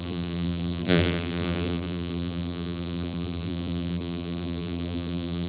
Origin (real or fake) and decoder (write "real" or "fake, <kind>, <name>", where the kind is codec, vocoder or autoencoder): fake, vocoder, BigVGAN v2